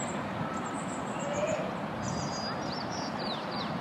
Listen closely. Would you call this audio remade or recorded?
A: remade